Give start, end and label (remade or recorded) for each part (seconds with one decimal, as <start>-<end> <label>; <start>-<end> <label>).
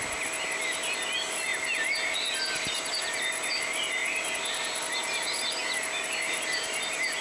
0.0-7.2 recorded